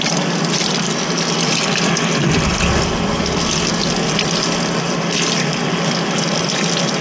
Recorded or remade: recorded